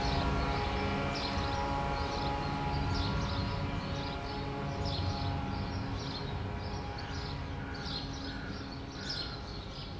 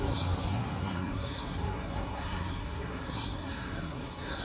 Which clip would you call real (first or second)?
first